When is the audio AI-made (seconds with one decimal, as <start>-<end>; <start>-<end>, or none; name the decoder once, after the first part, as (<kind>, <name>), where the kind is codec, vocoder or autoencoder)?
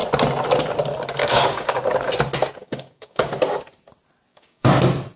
1.2-1.8 (codec, DAC); 2.6-3.3; 4.3-4.8